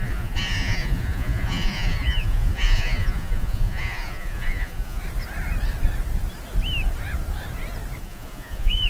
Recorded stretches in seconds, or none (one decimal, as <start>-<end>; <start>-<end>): 5.0-8.0

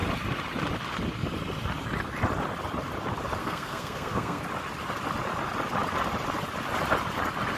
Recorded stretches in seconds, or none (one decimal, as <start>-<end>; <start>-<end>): 0.0-3.4; 4.4-7.6

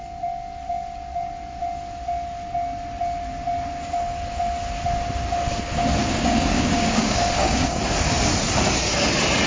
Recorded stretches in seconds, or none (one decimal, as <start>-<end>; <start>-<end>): 0.0-6.0; 7.8-9.5

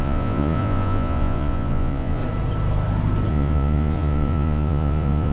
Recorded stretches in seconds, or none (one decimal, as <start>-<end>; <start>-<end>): 2.2-3.3